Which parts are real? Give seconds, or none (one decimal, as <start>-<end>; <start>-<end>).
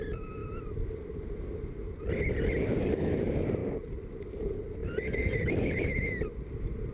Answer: 0.4-2.1